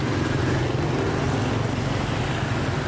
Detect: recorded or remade recorded